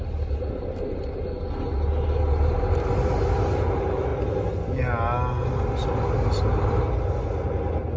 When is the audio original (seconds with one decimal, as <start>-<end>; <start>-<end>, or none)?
0.0-8.0